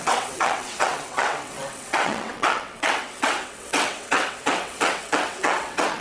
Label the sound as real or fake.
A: fake